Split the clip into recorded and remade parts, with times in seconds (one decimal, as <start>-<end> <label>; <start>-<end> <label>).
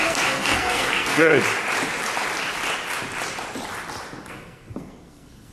0.0-1.3 remade; 1.3-4.3 recorded; 4.3-5.5 remade